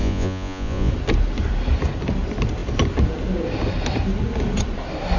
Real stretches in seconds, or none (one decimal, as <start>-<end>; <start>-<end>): 0.9-5.2